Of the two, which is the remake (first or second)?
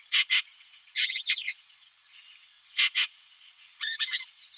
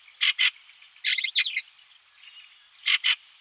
first